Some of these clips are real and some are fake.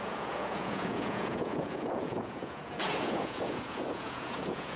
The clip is fake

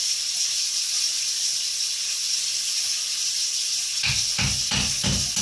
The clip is real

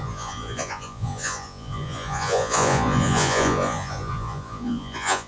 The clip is fake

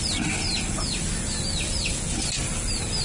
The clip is real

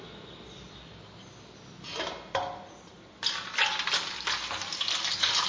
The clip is real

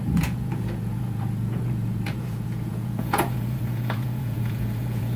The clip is fake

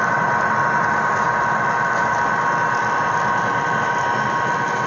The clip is real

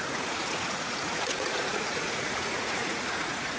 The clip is fake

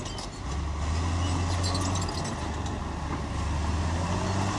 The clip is real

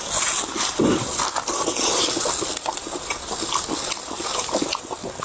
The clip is real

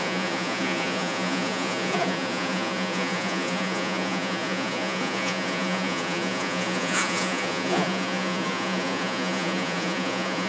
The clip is fake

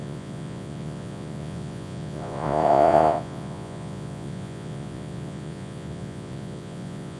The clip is fake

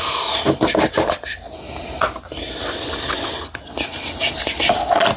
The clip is real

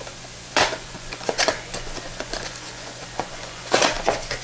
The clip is fake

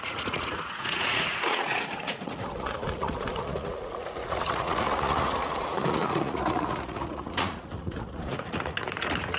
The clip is fake